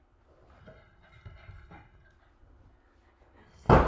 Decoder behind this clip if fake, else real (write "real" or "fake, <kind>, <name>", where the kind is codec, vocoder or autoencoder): real